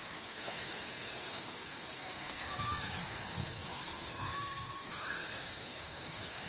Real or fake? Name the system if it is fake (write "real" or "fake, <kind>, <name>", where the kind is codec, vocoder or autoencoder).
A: fake, codec, SNAC